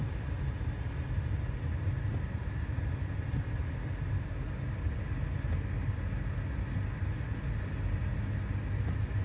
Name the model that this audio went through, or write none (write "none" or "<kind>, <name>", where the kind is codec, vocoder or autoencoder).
none